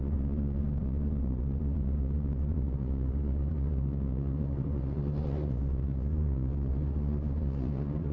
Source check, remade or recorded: remade